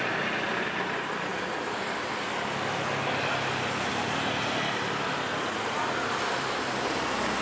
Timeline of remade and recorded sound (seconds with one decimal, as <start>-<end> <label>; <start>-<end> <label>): 0.0-7.4 recorded